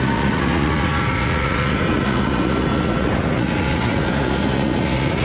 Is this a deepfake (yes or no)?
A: yes